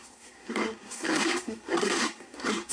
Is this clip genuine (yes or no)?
no